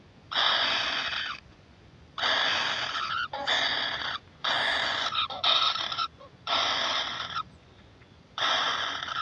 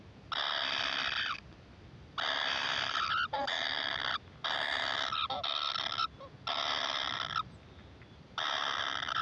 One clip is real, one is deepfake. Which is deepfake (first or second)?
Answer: first